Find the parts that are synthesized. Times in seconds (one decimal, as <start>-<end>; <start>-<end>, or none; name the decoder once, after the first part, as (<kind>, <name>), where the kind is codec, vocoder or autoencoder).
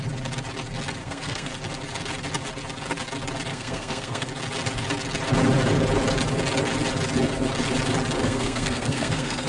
1.0-1.5 (codec, SNAC); 3.5-4.3; 8.2-9.5